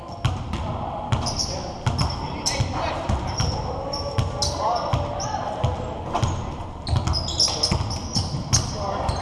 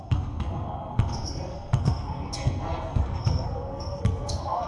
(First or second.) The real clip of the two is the first